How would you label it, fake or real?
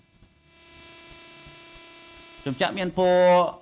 real